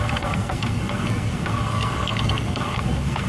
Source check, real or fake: fake